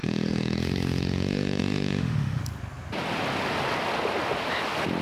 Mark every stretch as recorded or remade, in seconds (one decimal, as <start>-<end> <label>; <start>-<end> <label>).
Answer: 0.0-2.4 remade; 2.4-5.0 recorded

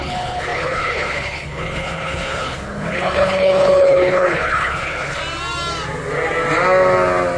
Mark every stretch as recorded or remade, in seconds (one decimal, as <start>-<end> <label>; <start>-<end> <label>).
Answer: 0.0-5.2 remade; 5.2-7.4 recorded